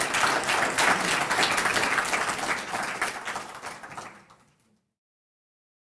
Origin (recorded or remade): recorded